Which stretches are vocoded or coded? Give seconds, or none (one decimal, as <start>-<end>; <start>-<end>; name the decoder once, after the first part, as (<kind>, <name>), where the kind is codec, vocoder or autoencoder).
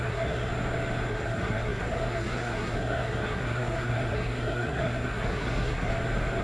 0.0-0.5 (codec, SNAC); 1.1-5.9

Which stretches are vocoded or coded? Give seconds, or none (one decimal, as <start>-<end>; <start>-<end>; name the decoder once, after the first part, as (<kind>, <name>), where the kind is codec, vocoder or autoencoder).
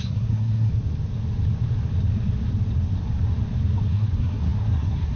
0.0-0.7 (codec, SNAC); 3.8-5.2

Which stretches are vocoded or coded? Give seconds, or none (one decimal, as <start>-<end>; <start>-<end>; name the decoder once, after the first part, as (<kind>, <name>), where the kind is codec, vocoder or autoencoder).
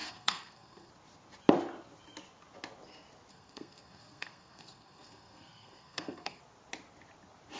0.0-0.9 (codec, SNAC); 3.3-6.4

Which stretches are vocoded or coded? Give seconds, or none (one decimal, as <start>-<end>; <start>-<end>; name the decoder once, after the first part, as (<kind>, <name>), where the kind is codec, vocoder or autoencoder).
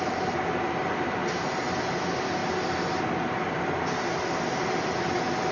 none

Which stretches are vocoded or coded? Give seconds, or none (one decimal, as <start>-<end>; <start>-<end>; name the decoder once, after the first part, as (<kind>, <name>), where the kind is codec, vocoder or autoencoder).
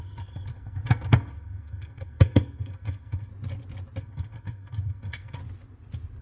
0.0-3.3 (codec, SNAC); 4.0-5.4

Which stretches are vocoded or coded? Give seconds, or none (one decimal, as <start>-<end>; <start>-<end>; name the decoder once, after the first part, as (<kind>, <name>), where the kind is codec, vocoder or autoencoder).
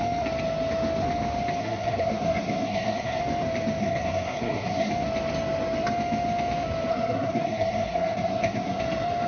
1.6-3.2 (codec, SNAC); 3.8-4.9; 6.9-8.8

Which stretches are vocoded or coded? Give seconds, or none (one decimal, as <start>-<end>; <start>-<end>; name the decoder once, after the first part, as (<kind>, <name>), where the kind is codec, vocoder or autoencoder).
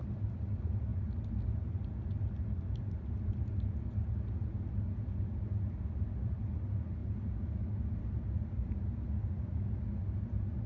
none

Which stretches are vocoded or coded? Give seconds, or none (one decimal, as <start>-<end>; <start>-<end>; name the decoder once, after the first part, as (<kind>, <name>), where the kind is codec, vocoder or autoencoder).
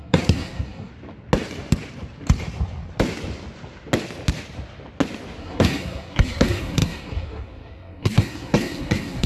0.0-0.9 (codec, SNAC); 5.4-9.3